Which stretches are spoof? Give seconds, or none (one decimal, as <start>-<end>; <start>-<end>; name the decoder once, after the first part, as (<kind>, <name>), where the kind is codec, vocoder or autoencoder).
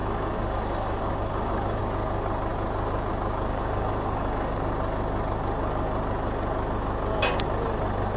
0.0-1.8 (codec, DAC); 3.5-4.6